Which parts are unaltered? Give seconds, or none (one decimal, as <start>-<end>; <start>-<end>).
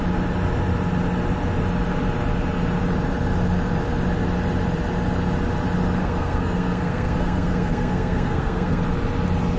0.0-6.0; 8.8-9.6